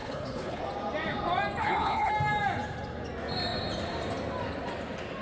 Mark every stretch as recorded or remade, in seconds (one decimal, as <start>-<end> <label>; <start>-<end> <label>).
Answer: 0.0-0.6 remade; 0.6-1.6 recorded; 1.6-2.1 remade; 2.1-5.2 recorded